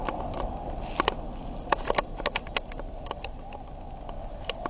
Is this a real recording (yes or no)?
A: yes